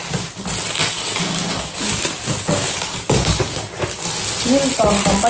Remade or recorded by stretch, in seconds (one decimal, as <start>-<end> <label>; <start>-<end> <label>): 0.0-0.8 recorded; 0.8-4.0 remade; 4.0-5.3 recorded